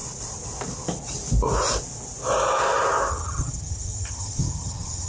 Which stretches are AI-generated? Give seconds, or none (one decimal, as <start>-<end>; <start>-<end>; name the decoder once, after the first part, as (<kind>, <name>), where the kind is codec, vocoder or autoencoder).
3.1-5.1 (vocoder, HiFi-GAN)